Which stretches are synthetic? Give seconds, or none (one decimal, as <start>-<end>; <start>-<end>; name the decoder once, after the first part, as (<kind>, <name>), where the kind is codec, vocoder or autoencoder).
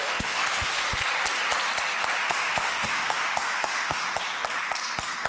0.0-0.8 (autoencoder, DAC-VAE); 2.2-4.0